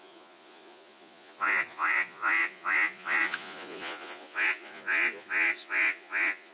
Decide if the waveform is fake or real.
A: fake